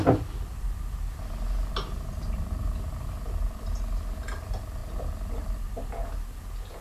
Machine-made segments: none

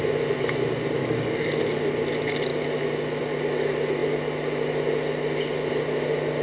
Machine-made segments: 1.0-1.6 (codec, DAC)

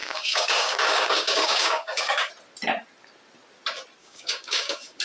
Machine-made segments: 0.0-2.3 (codec, DAC); 4.0-5.0

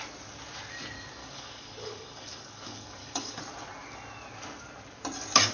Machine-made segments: 1.2-3.4 (codec, DAC)

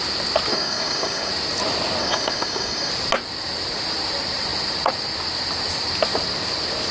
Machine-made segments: 0.5-1.3 (codec, DAC); 2.0-2.9

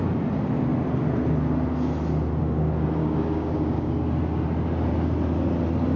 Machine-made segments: 3.0-3.9 (codec, DAC)

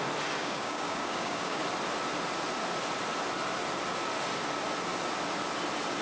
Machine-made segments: 0.4-1.6 (codec, DAC)